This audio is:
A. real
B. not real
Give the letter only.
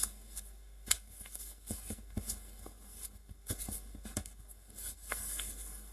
B